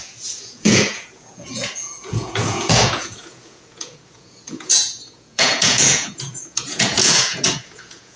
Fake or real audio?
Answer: fake